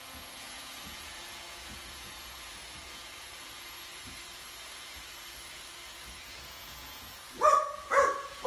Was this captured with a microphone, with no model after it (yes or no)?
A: no